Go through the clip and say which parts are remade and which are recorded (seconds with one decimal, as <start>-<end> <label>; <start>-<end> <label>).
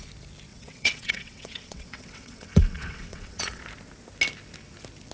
0.0-0.5 recorded; 0.5-3.6 remade; 3.6-5.1 recorded